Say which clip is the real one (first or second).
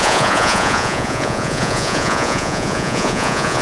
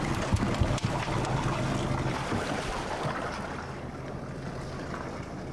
second